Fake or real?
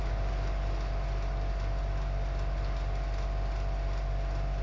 real